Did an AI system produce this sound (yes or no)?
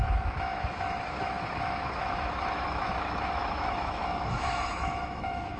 yes